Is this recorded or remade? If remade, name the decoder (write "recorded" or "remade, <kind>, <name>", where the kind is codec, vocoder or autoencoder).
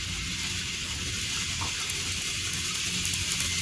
recorded